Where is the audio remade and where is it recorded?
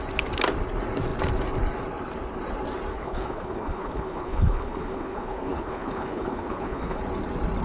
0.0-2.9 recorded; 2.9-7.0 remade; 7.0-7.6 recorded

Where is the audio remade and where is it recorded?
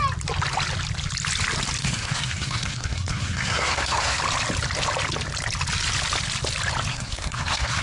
0.0-1.8 recorded; 1.8-4.2 remade; 4.2-6.9 recorded; 6.9-7.8 remade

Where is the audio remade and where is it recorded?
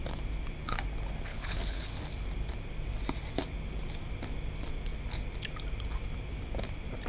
0.0-1.3 recorded; 1.3-1.9 remade; 1.9-7.1 recorded